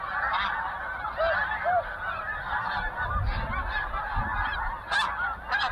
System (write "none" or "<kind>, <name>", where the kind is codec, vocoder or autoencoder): none